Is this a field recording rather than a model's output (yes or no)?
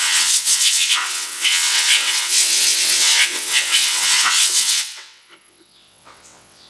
no